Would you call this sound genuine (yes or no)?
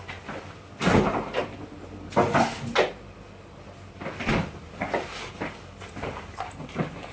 yes